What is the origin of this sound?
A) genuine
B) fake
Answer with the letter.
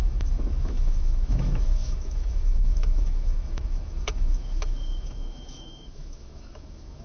B